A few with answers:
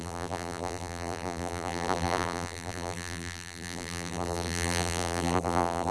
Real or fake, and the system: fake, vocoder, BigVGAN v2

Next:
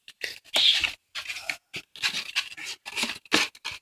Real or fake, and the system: real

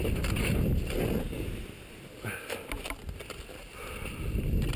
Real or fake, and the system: real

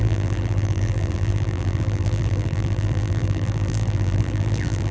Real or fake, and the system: fake, vocoder, BigVGAN v2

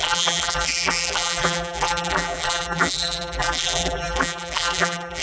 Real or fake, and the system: fake, vocoder, BigVGAN v2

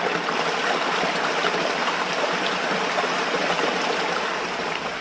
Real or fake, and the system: real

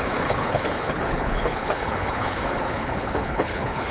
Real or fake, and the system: fake, codec, HILCodec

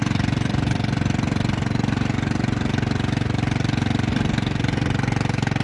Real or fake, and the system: real